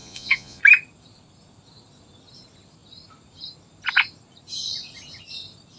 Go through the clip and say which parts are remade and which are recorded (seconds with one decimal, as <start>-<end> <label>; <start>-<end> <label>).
0.0-0.6 remade; 0.6-5.8 recorded